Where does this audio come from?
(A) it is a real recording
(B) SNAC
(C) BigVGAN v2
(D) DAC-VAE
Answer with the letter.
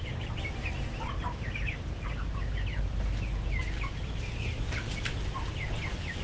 A